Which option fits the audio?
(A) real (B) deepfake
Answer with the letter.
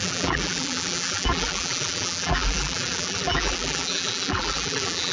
B